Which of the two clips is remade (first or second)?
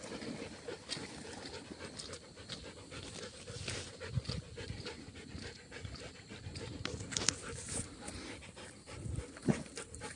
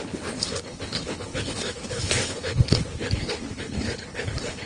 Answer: second